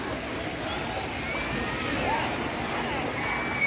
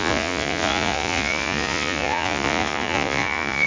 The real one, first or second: first